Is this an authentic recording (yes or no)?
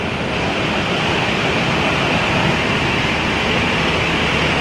yes